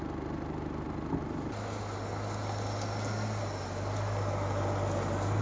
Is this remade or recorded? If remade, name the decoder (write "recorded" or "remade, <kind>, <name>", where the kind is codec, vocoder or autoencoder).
recorded